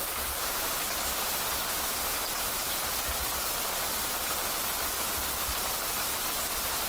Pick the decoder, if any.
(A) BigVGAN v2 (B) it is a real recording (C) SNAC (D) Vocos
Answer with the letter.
B